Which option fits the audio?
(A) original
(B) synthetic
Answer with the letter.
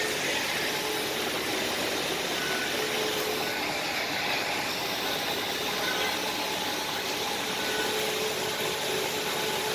A